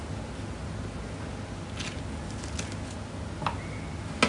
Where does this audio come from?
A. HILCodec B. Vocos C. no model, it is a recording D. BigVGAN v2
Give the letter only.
C